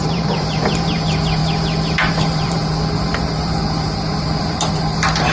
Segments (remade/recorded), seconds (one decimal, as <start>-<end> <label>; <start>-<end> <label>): 0.0-1.4 remade; 1.4-2.1 recorded; 2.1-5.3 remade